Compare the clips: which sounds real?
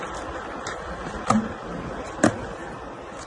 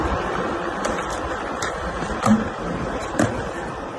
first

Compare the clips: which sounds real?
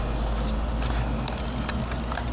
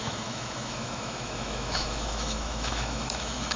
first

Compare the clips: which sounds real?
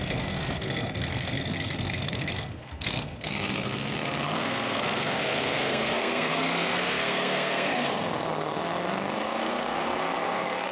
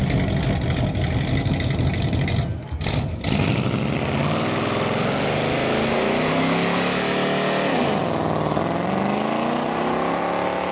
second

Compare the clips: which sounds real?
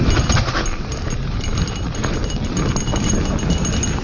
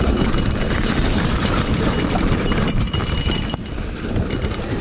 first